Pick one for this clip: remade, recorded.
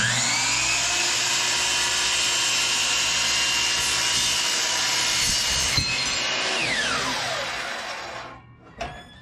recorded